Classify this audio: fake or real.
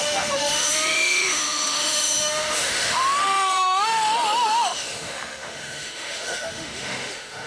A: fake